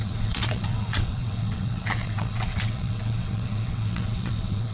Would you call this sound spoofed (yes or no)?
yes